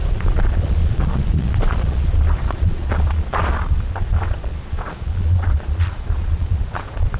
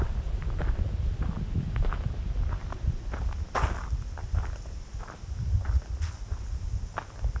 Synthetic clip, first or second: first